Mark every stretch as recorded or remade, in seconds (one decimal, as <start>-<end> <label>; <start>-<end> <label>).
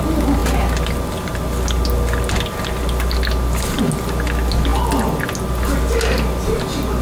0.0-7.0 recorded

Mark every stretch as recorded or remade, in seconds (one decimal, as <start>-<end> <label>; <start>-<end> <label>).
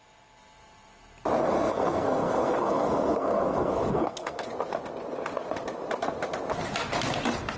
0.0-1.4 recorded; 1.4-4.5 remade; 4.5-7.6 recorded